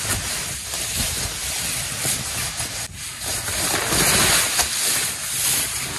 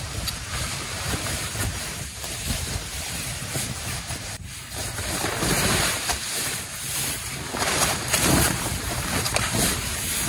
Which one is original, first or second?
first